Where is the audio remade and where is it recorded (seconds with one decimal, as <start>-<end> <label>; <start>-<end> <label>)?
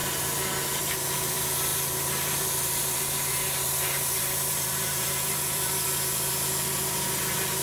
0.0-1.7 recorded; 1.7-6.3 remade; 6.3-7.6 recorded